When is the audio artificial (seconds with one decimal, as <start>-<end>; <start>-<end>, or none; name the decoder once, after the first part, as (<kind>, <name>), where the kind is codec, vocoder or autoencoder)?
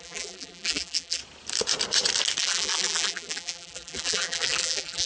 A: 0.0-1.2 (vocoder, BigVGAN v2); 2.4-5.1